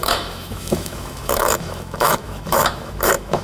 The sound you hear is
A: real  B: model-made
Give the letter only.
B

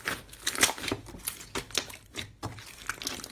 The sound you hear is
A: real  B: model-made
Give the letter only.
A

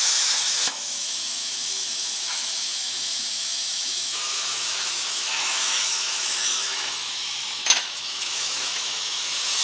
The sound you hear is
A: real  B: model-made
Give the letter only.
B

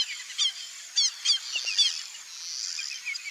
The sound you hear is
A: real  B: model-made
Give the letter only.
A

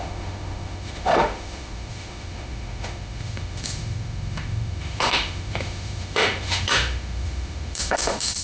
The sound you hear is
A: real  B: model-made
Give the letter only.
B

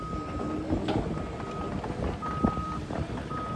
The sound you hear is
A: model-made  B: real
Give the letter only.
B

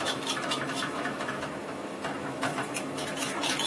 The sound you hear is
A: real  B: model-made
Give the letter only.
B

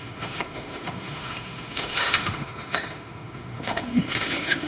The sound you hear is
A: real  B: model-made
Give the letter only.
B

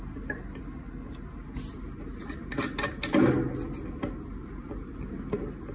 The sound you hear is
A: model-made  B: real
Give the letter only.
B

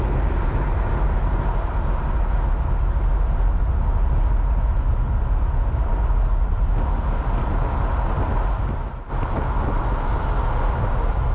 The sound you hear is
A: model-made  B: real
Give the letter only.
B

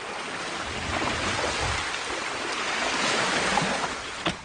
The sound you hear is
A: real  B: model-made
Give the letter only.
A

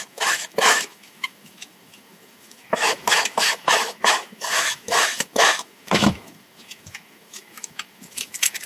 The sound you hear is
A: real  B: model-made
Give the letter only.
B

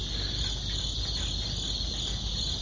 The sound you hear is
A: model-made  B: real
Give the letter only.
B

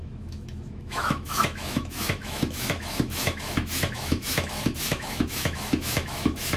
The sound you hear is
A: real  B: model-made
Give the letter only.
B